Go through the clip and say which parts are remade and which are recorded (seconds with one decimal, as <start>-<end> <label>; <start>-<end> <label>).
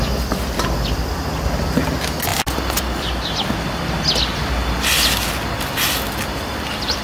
0.0-7.0 recorded